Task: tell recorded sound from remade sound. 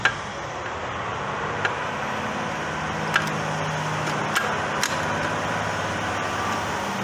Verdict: recorded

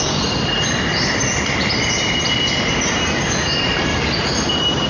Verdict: recorded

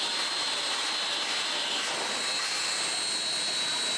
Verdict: recorded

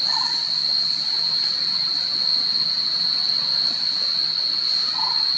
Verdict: recorded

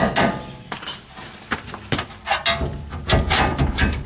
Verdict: recorded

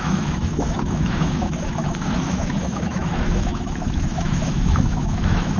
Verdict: remade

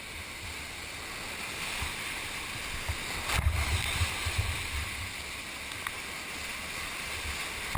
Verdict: recorded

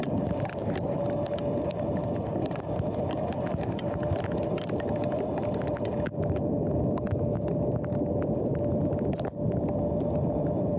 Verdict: recorded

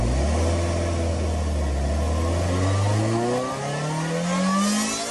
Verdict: recorded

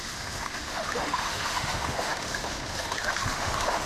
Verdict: remade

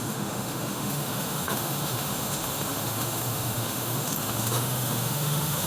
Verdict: remade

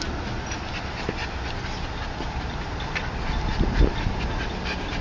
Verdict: recorded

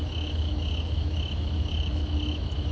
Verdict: remade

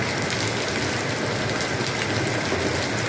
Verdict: recorded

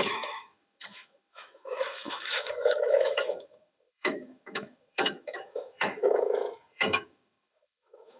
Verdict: remade